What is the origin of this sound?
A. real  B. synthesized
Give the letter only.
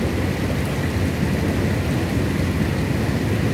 A